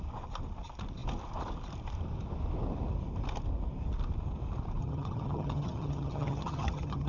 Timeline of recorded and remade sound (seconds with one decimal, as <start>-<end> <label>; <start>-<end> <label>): 0.0-4.8 recorded; 4.8-7.1 remade